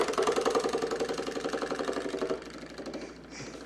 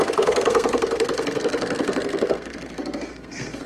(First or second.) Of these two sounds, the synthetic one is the second